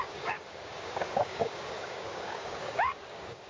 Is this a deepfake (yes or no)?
yes